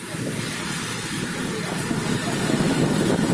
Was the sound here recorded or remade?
recorded